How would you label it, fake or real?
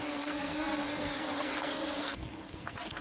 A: fake